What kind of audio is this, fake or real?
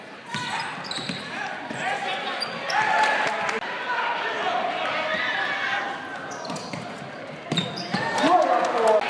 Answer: real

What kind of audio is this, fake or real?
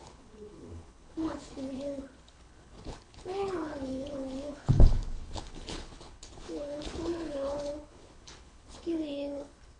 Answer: fake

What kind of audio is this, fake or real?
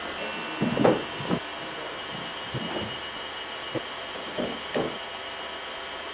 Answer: real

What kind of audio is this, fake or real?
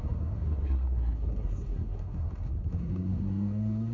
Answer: fake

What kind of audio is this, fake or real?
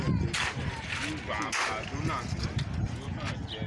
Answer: real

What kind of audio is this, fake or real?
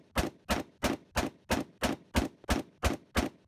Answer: real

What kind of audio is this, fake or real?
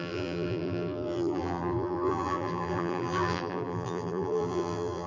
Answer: fake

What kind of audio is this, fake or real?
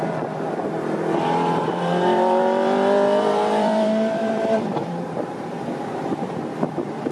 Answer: fake